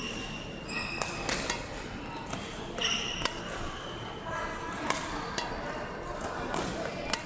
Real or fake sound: real